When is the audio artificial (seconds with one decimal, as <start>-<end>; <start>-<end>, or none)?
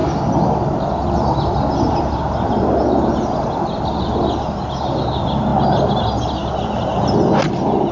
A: none